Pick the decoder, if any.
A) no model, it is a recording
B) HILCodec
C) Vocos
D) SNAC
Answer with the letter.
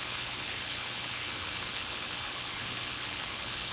B